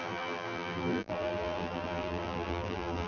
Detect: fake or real fake